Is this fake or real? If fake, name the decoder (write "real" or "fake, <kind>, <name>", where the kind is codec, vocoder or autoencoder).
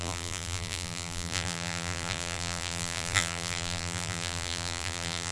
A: fake, vocoder, BigVGAN v2